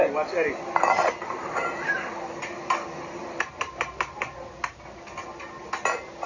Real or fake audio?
real